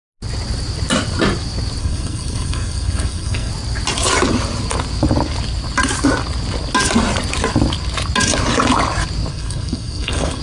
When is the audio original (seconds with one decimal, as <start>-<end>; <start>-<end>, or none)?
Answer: 0.0-1.8; 3.5-9.3